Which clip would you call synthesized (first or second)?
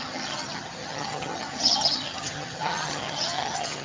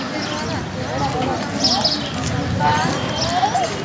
first